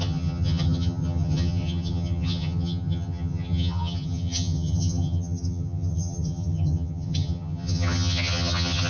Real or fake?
fake